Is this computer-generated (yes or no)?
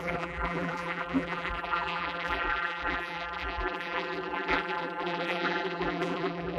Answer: yes